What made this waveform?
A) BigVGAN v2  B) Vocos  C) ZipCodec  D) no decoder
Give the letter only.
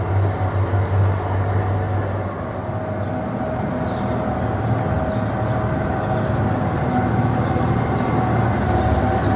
D